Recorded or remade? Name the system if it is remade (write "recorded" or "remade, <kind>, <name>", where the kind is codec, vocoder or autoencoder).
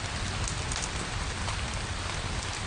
recorded